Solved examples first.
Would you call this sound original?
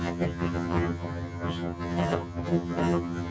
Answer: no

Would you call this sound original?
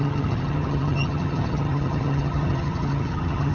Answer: no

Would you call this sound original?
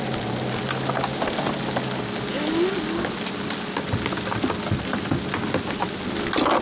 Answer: yes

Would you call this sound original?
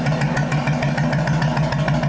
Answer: yes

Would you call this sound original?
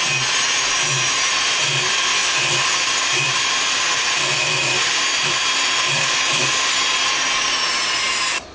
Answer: yes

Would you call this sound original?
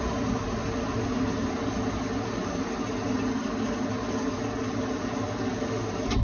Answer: yes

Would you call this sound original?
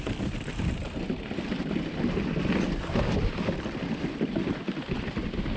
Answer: yes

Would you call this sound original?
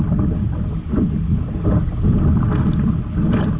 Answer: yes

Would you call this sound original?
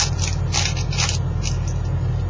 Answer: yes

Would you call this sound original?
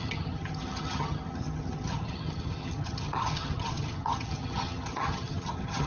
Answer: no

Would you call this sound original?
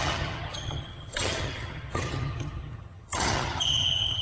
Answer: no